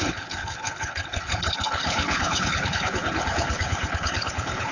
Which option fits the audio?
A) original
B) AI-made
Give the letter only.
B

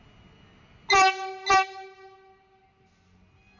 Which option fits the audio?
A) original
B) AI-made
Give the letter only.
A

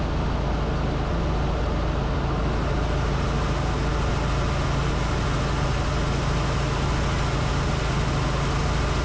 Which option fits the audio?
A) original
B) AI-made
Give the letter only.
A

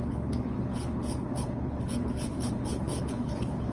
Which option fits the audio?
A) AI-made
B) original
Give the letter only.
A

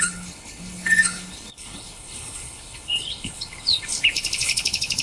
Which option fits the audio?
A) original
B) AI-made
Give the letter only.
B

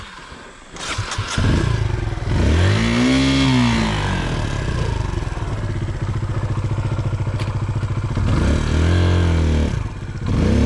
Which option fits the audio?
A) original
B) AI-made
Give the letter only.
A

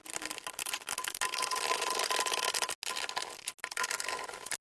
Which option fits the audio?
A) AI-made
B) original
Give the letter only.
B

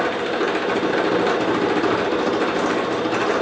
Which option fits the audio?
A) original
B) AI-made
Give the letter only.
A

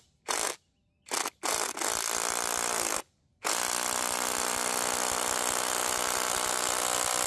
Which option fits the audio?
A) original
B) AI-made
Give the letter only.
A